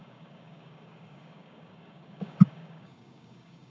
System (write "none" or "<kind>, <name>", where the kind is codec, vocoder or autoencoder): codec, DAC